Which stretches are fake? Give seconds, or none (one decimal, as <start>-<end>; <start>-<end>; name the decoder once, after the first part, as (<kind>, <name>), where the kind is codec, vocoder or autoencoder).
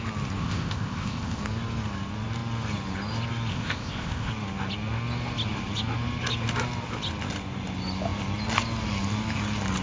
0.4-1.4 (codec, ZipCodec); 3.5-4.3